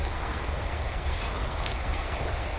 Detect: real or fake fake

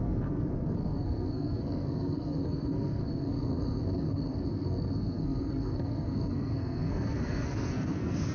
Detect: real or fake fake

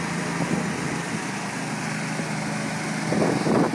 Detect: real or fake real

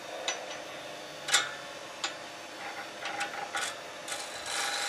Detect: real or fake real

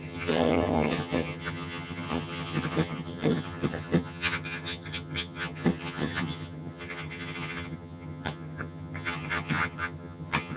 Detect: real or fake fake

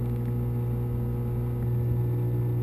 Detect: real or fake real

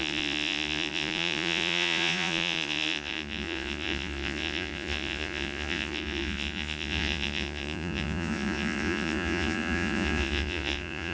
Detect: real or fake fake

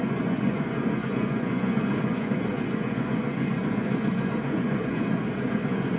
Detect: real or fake fake